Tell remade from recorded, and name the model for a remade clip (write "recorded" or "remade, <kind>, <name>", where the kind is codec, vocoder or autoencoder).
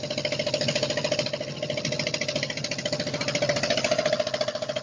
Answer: recorded